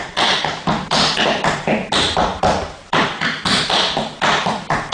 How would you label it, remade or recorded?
remade